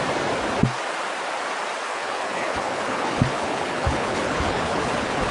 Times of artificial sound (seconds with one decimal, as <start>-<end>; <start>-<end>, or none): 1.9-5.3